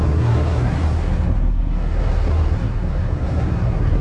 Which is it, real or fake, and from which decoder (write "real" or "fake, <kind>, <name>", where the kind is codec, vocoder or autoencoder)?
fake, codec, SNAC